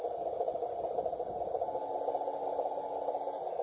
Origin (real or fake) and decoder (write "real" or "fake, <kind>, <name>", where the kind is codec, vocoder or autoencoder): real